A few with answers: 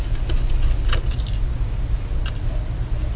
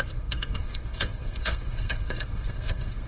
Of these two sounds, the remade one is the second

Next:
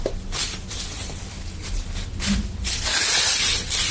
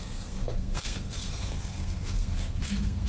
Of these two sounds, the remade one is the second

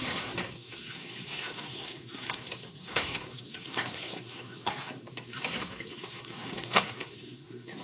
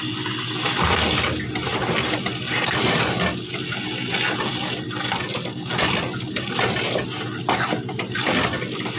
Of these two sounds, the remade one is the first